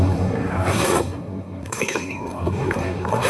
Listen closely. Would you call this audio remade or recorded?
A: remade